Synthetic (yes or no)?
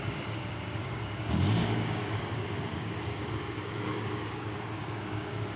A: yes